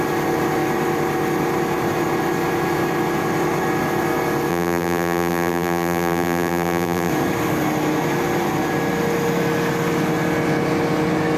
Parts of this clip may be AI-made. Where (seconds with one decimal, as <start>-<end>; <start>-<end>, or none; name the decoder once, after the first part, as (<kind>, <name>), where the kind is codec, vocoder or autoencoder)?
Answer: 4.5-7.1 (vocoder, BigVGAN v2)